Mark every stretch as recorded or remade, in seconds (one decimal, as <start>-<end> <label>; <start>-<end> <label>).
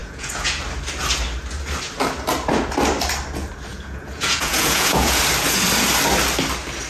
0.0-0.6 remade; 0.6-3.7 recorded; 3.7-5.2 remade; 5.2-6.9 recorded